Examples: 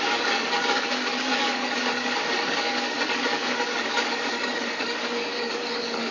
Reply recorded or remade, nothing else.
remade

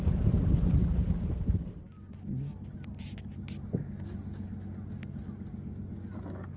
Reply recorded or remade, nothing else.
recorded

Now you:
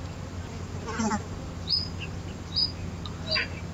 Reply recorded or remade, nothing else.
recorded